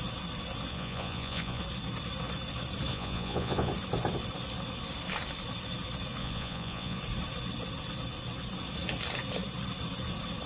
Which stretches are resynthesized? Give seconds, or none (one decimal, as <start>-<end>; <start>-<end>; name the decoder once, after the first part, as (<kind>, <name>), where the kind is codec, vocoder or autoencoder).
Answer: 0.7-1.6 (vocoder, Vocos); 2.9-3.7; 6.2-7.0